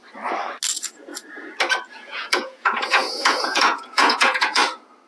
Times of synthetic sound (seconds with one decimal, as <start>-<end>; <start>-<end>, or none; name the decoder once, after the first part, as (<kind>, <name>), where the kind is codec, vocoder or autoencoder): 0.7-1.1 (vocoder, Vocos); 1.9-4.6